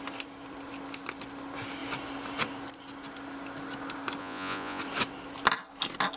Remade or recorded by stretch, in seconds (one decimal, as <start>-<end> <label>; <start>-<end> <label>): 0.0-4.2 recorded; 4.2-4.8 remade; 4.8-6.2 recorded

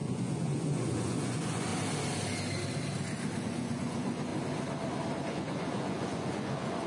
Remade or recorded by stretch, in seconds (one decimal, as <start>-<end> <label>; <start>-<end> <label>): 0.0-1.7 remade; 1.7-3.4 recorded; 3.4-4.3 remade; 4.3-5.2 recorded; 5.2-6.9 remade

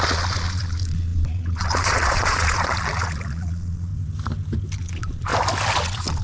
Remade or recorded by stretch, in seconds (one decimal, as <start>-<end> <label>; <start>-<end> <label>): 0.0-3.9 remade; 3.9-4.8 recorded; 4.8-5.3 remade; 5.3-5.8 recorded; 5.8-6.2 remade

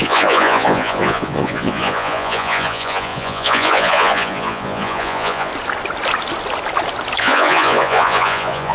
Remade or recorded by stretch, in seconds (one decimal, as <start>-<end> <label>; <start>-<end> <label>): 0.0-5.5 remade; 5.5-7.2 recorded; 7.2-8.7 remade

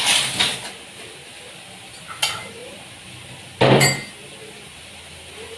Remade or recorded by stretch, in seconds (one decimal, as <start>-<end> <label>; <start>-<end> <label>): 0.0-5.6 recorded

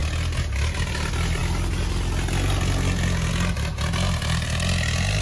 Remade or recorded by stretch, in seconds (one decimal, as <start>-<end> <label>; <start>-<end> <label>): 0.0-5.2 recorded